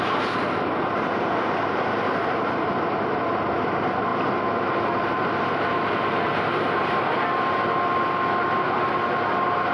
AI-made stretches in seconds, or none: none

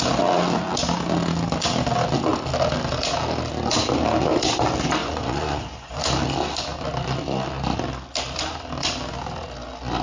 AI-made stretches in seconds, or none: 5.0-6.0 (vocoder, Vocos)